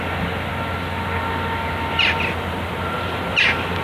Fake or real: real